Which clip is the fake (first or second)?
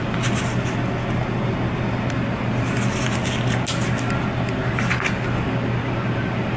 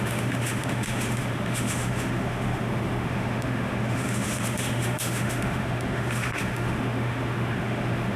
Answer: second